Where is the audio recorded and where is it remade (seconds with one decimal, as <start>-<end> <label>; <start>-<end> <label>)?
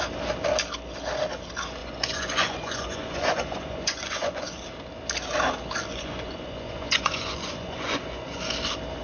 0.0-1.8 recorded; 1.8-4.6 remade; 4.6-5.9 recorded; 5.9-8.5 remade; 8.5-9.0 recorded